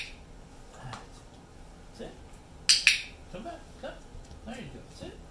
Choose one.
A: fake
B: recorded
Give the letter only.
B